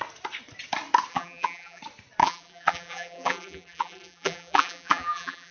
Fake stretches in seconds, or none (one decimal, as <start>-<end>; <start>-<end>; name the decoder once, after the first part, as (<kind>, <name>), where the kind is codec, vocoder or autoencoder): 1.1-1.8 (vocoder, BigVGAN v2); 2.2-5.5

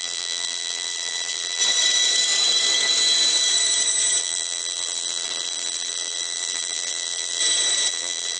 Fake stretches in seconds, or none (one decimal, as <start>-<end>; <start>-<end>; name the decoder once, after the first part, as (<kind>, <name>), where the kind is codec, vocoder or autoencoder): 0.0-1.6 (vocoder, BigVGAN v2); 4.2-7.4; 7.9-8.4

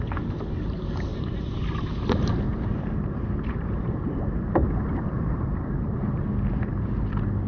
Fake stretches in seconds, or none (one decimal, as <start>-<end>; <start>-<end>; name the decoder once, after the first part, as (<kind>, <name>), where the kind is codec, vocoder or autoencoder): 1.1-1.9 (vocoder, BigVGAN v2); 2.5-6.3

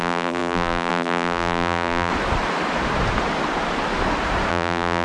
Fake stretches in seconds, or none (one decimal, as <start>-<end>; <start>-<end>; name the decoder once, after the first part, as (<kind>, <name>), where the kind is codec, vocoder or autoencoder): 0.0-2.1 (vocoder, BigVGAN v2); 4.5-5.0

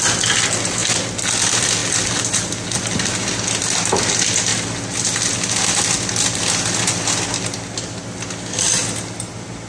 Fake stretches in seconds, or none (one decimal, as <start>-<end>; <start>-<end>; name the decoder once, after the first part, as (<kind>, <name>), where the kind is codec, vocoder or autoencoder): 1.8-2.5 (vocoder, BigVGAN v2)

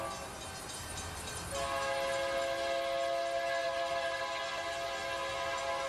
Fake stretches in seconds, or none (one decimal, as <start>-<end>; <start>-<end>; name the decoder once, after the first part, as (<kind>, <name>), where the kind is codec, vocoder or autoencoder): 3.6-4.2 (vocoder, BigVGAN v2)

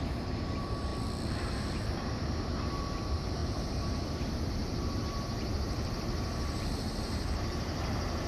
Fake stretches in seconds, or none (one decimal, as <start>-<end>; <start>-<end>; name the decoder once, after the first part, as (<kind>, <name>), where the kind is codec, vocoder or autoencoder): 0.0-0.9 (vocoder, BigVGAN v2); 1.4-8.3

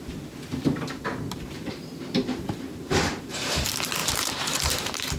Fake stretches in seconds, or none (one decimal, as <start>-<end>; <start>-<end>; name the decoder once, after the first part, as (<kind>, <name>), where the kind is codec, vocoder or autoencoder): 0.5-3.6 (vocoder, BigVGAN v2); 4.0-5.2